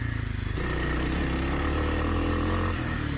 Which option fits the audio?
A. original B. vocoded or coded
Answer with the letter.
A